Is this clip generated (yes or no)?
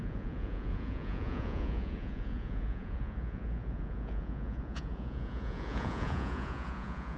yes